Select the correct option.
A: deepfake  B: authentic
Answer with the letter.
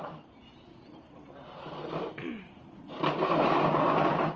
A